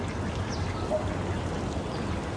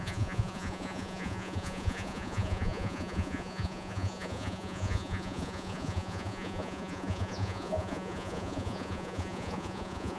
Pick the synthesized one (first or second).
second